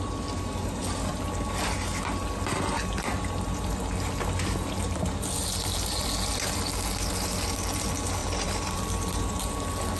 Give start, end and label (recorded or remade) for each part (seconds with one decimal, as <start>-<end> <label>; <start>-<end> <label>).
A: 0.0-8.2 recorded; 8.2-9.2 remade; 9.2-10.0 recorded